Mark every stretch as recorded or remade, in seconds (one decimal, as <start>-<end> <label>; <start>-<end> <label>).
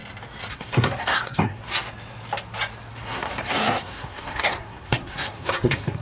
0.0-0.5 recorded; 0.5-1.7 remade; 1.7-2.9 recorded; 2.9-6.0 remade